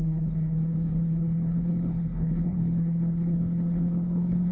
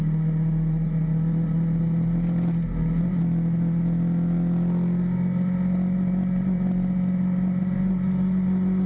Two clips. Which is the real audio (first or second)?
second